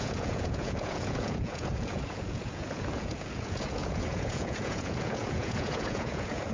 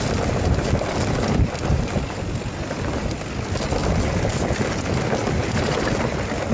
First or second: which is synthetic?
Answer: first